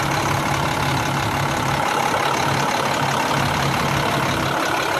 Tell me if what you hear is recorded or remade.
recorded